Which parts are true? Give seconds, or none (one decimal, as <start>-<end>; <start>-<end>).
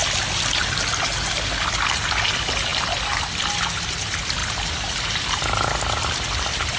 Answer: 0.0-6.8